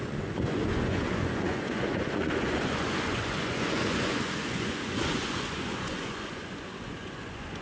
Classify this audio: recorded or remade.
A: remade